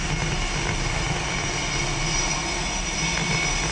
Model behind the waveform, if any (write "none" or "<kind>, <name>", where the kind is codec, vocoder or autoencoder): none